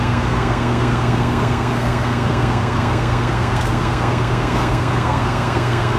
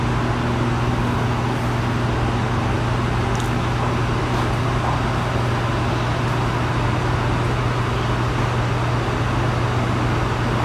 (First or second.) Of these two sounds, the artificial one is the first